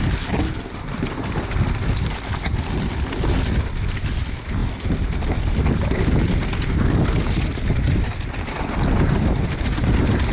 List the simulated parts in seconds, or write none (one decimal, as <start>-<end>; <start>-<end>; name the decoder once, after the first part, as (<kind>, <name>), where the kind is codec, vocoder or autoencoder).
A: 4.6-5.3 (vocoder, BigVGAN v2)